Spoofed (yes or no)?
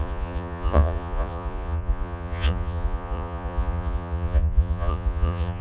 yes